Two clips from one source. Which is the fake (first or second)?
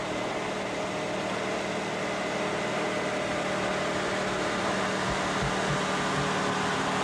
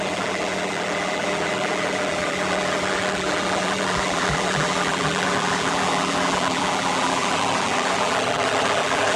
second